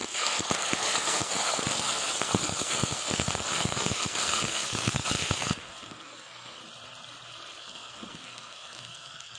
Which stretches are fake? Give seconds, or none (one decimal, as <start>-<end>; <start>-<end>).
0.0-6.6; 7.6-9.4